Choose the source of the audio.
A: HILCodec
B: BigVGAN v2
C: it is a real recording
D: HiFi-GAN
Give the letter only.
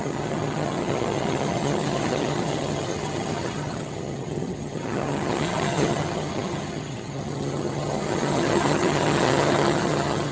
D